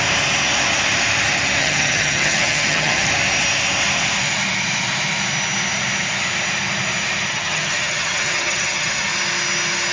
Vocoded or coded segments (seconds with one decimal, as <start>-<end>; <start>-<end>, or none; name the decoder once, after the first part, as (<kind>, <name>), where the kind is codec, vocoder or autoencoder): 1.6-3.1 (vocoder, HiFi-GAN); 7.3-9.1